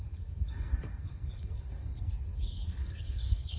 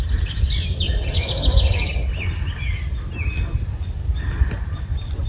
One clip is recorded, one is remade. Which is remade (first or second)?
first